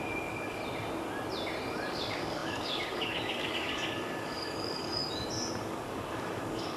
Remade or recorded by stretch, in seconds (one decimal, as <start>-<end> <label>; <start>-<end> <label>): 0.0-0.6 remade; 0.6-1.9 recorded; 1.9-5.0 remade; 5.0-5.6 recorded; 5.6-6.8 remade